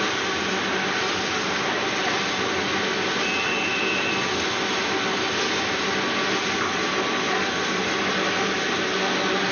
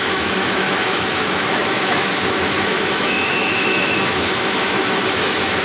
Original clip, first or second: first